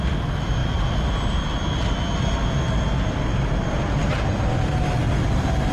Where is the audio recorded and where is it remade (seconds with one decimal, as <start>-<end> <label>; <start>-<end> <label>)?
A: 0.0-5.7 recorded